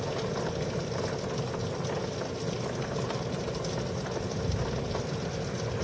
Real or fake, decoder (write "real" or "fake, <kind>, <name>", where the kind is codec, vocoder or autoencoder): real